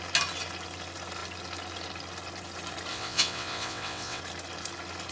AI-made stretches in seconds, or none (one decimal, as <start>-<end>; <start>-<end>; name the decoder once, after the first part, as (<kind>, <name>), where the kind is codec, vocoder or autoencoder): 2.9-4.2 (vocoder, WaveNeXt)